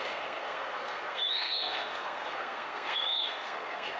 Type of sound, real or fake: fake